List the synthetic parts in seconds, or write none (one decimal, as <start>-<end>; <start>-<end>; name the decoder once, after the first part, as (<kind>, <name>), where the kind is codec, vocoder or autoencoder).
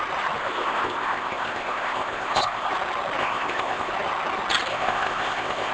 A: 0.4-2.7 (codec, ZipCodec); 3.2-3.9; 4.7-5.7